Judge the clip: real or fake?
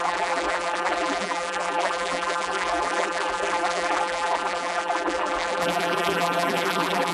fake